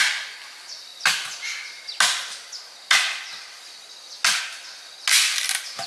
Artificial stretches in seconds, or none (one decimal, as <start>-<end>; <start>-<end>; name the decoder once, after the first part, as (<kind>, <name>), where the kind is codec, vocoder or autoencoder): none